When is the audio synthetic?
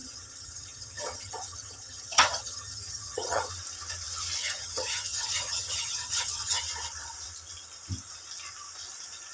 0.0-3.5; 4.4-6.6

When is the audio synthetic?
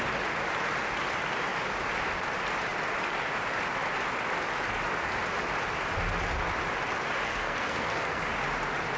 7.2-8.2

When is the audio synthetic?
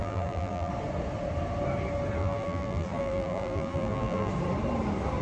0.0-0.7; 2.2-4.3